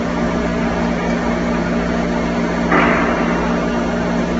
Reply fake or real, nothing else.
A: real